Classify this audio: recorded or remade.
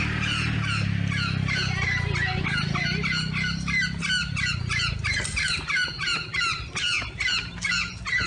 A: recorded